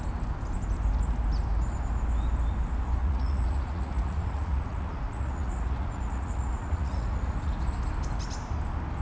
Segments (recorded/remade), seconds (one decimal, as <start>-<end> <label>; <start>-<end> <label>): 0.0-3.0 recorded; 3.0-7.5 remade; 7.5-9.0 recorded